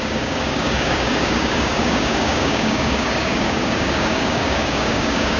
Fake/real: fake